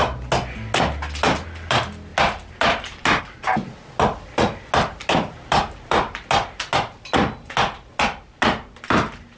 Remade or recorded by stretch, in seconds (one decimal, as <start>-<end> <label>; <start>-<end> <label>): 0.0-9.4 recorded